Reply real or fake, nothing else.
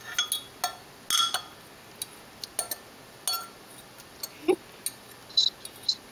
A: real